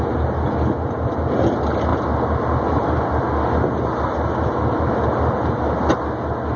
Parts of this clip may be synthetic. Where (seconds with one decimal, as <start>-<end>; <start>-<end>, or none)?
none